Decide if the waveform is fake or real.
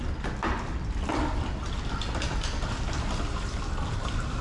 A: real